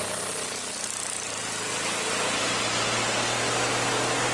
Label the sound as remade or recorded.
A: recorded